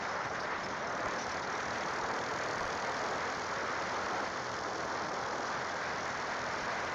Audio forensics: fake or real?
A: real